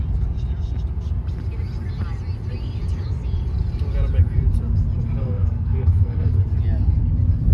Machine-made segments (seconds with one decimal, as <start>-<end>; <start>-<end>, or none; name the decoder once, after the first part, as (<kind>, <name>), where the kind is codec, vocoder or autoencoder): 5.2-6.4 (codec, SNAC)